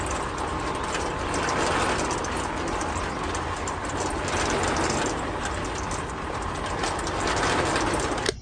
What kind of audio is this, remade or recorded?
recorded